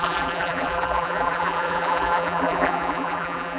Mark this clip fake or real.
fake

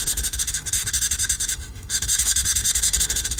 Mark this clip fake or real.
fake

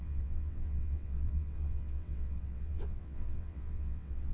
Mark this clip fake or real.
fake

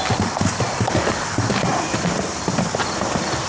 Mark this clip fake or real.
real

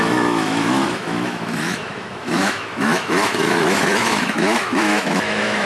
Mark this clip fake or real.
fake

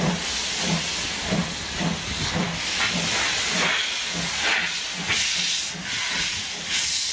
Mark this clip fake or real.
real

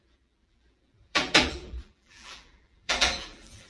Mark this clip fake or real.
fake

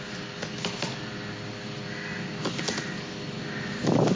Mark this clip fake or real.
real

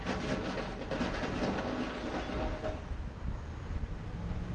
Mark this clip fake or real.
real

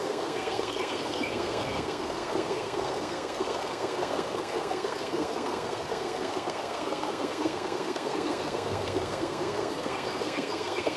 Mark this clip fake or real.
fake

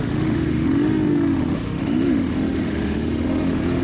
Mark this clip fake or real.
fake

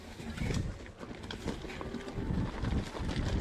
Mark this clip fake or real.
real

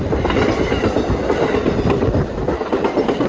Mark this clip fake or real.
real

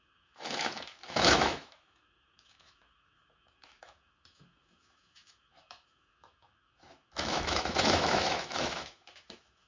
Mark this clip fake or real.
fake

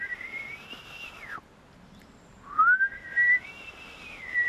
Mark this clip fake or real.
real